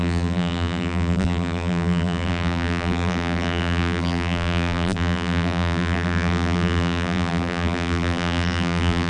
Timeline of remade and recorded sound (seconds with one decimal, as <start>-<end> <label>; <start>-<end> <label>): 0.0-9.1 remade